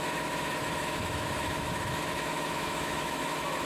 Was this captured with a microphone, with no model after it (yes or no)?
no